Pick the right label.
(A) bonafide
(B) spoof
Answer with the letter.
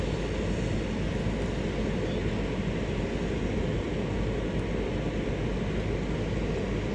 A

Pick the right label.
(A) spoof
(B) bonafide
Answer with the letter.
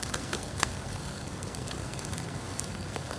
A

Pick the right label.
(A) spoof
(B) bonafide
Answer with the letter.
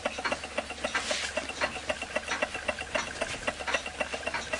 B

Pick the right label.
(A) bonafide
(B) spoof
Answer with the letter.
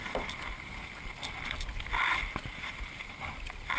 A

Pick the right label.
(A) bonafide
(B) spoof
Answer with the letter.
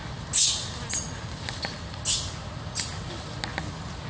A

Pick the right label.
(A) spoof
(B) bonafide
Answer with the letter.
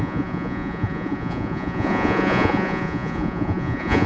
A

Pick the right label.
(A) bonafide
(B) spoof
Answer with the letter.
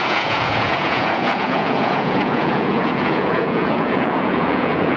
B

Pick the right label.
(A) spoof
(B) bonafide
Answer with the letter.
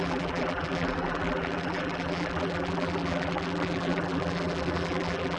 A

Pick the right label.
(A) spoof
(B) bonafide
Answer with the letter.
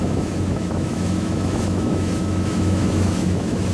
A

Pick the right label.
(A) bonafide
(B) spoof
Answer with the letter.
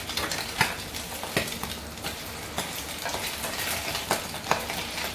A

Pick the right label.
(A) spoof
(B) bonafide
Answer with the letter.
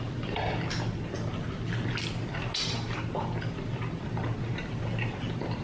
B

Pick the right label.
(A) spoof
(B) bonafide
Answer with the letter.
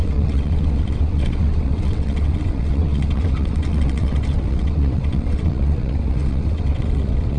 A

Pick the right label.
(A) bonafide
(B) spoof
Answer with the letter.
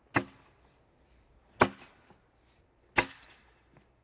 A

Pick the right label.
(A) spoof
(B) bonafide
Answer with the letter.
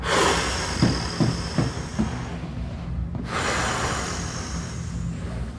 B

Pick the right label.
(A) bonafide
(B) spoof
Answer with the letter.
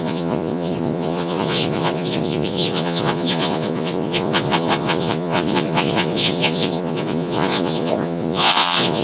B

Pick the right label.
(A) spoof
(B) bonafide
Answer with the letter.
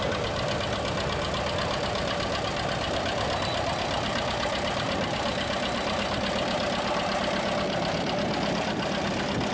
B